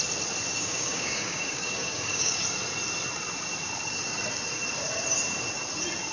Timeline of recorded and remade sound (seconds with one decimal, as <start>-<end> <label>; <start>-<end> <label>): 0.0-0.5 recorded; 0.5-2.4 remade; 2.4-6.1 recorded

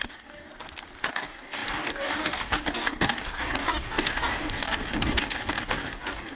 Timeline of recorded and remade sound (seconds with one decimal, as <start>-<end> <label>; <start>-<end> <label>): 0.0-0.5 remade; 0.5-1.1 recorded; 1.1-6.4 remade